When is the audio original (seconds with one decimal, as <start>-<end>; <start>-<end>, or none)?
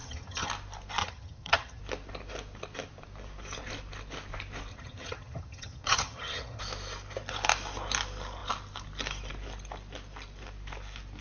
0.5-1.0; 1.8-4.7; 6.6-11.2